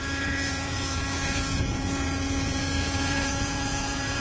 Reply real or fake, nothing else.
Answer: fake